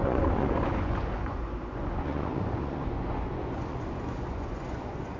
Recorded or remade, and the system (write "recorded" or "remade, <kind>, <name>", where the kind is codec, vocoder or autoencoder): remade, vocoder, Vocos